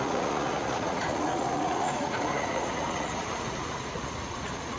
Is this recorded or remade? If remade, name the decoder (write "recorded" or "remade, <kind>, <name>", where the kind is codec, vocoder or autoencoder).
remade, vocoder, Vocos